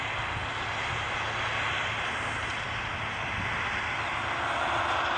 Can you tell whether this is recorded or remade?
recorded